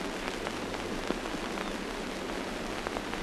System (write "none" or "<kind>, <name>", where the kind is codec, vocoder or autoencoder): none